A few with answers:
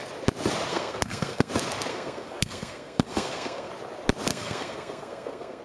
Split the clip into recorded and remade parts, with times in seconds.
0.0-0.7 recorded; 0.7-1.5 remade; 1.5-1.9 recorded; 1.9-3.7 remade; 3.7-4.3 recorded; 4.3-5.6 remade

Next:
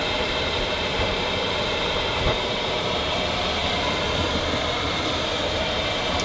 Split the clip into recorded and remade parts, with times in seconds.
0.0-3.6 remade; 3.6-4.3 recorded; 4.3-6.2 remade

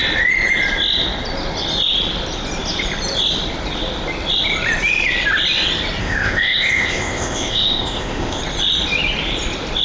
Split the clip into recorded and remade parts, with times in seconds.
0.0-6.0 recorded; 6.0-8.4 remade; 8.4-9.8 recorded

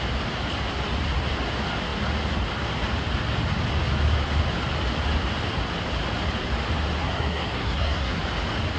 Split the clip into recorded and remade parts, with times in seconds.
0.0-7.0 recorded; 7.0-8.2 remade; 8.2-8.8 recorded